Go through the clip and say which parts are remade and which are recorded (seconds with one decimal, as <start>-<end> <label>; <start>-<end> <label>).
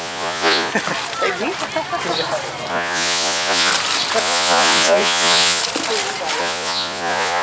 0.0-0.7 remade; 0.7-2.7 recorded; 2.7-3.7 remade; 3.7-4.2 recorded; 4.2-5.6 remade; 5.6-6.4 recorded; 6.4-7.4 remade